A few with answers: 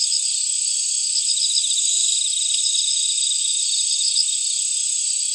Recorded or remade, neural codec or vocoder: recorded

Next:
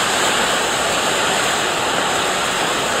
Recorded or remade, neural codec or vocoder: recorded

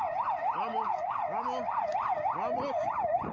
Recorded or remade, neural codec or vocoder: recorded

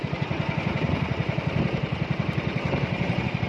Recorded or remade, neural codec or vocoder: remade, vocoder, BigVGAN v2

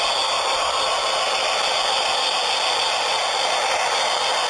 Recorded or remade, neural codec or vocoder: recorded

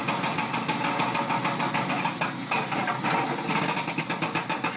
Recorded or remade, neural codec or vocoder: recorded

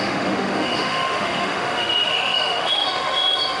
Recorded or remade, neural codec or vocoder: remade, autoencoder, DAC-VAE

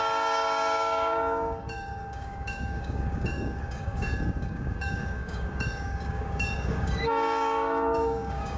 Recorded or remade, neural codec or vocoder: remade, codec, DAC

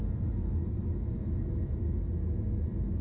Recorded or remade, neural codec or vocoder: recorded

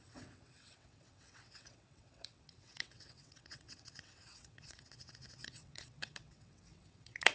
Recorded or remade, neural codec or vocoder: remade, vocoder, WaveNeXt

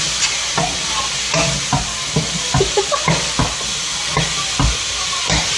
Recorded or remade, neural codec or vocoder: recorded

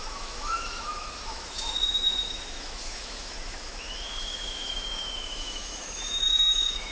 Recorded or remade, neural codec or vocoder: remade, autoencoder, DAC-VAE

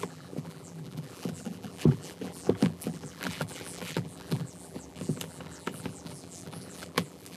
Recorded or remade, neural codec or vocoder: remade, vocoder, BigVGAN v2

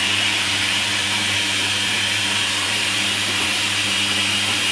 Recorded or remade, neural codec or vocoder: remade, vocoder, BigVGAN v2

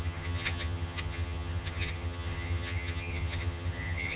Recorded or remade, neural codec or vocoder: remade, vocoder, HiFi-GAN